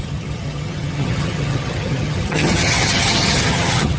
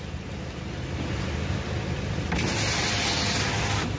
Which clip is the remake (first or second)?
first